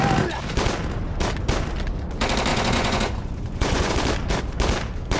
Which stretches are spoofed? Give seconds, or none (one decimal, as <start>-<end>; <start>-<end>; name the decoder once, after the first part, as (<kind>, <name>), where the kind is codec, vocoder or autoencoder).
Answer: 2.5-3.9 (vocoder, Vocos)